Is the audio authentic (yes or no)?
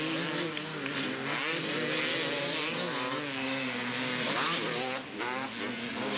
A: yes